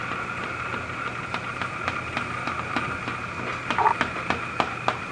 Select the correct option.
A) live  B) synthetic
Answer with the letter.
B